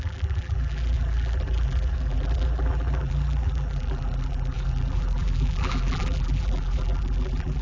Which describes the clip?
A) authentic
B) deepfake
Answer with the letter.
B